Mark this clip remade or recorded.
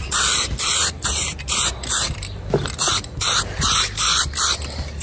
recorded